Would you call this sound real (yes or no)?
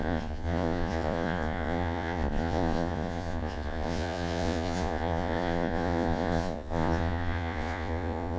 no